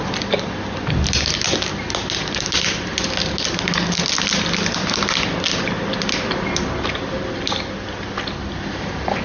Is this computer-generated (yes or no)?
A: no